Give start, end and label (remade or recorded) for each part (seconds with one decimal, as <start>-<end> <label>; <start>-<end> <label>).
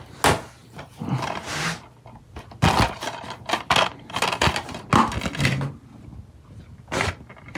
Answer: 0.0-7.6 recorded